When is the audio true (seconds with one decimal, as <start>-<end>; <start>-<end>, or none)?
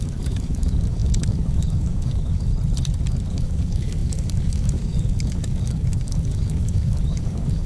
2.5-3.3